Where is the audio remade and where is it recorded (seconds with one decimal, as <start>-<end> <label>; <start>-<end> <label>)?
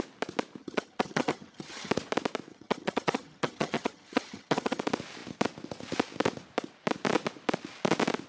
0.0-0.6 recorded; 0.6-1.9 remade; 1.9-2.5 recorded; 2.5-4.8 remade; 4.8-8.3 recorded